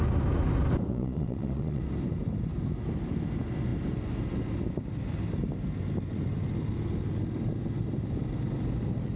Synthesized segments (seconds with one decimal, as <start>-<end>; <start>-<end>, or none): 0.9-1.8